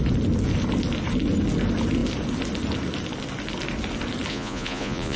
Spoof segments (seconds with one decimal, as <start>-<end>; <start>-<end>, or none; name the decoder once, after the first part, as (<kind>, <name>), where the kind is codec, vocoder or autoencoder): 4.3-5.2 (vocoder, Vocos)